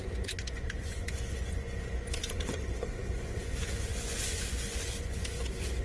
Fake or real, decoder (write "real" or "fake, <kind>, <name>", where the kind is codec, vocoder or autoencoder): fake, vocoder, Vocos